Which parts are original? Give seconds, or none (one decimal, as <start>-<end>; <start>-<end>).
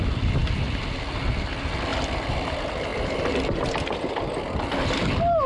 0.0-5.5